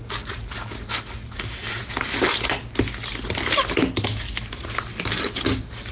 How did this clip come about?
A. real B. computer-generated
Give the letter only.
A